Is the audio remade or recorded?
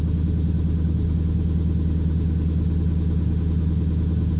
recorded